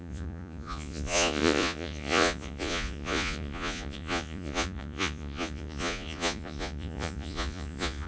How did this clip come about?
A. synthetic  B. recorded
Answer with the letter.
A